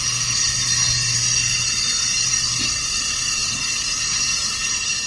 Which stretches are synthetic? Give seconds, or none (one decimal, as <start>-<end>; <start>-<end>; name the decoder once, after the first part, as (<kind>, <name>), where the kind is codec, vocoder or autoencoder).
none